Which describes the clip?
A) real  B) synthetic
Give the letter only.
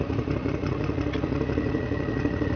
B